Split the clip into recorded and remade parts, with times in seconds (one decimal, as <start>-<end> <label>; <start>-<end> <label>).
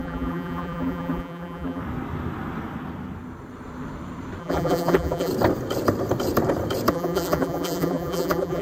0.0-1.8 remade; 1.8-4.4 recorded; 4.4-5.3 remade; 5.3-6.9 recorded; 6.9-8.6 remade